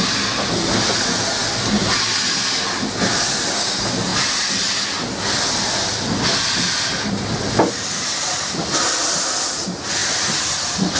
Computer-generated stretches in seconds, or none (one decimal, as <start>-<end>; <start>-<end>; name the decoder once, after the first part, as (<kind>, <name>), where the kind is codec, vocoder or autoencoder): none